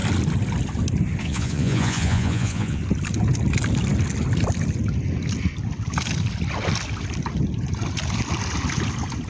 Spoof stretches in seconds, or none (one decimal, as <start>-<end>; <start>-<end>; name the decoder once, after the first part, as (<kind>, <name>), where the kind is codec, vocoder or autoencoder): 1.2-2.8 (vocoder, Vocos)